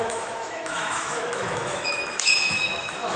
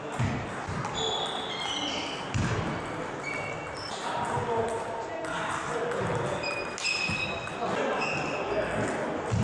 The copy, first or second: first